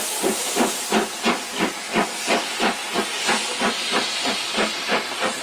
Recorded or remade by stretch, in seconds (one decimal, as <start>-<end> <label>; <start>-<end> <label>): 0.0-5.4 recorded